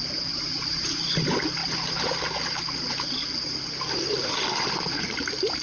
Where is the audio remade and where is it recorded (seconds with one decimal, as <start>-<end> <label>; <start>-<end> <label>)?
0.0-5.6 recorded